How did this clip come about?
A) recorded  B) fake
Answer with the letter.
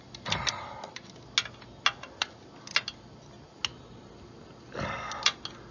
A